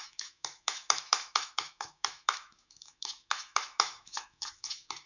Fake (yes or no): yes